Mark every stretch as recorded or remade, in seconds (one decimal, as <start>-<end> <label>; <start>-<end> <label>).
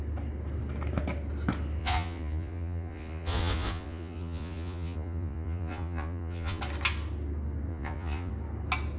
0.0-1.8 recorded; 1.8-6.6 remade; 6.6-7.7 recorded; 7.7-8.3 remade; 8.3-9.0 recorded